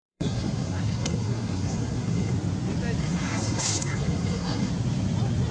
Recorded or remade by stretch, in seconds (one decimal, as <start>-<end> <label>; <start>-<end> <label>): 0.0-2.3 remade; 2.3-3.0 recorded; 3.0-4.7 remade; 4.7-5.5 recorded